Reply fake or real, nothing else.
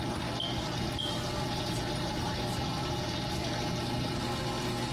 real